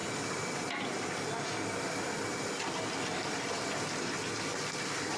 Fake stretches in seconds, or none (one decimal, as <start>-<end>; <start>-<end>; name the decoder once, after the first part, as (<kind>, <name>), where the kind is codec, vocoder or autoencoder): none